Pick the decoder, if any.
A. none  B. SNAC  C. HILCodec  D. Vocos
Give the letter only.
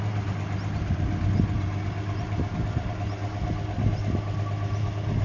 A